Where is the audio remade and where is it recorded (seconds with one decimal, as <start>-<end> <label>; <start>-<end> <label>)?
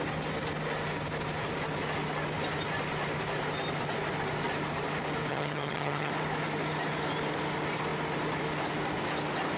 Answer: 0.0-5.3 recorded; 5.3-6.1 remade; 6.1-9.6 recorded